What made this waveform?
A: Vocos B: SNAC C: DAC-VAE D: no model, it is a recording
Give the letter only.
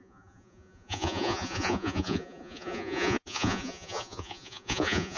A